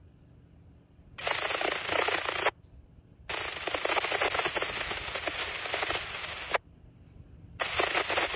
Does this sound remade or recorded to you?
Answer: recorded